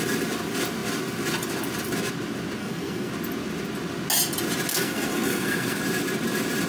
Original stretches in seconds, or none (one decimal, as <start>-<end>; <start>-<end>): 0.0-2.6; 3.1-4.7; 5.8-6.7